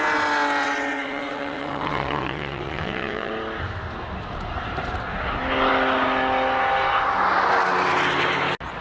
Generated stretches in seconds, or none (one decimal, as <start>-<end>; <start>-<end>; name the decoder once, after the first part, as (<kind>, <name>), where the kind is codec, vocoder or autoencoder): 0.6-3.3 (vocoder, WaveNeXt)